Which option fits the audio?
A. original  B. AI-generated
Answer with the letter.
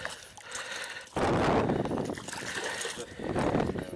A